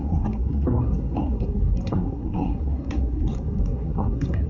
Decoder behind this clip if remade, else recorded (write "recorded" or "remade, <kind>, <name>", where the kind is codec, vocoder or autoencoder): remade, codec, SNAC